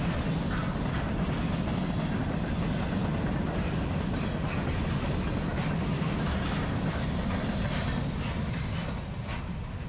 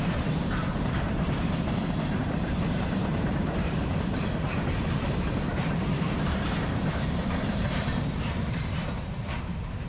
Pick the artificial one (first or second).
second